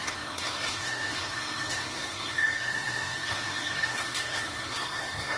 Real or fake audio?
fake